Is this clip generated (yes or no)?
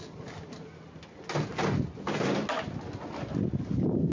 no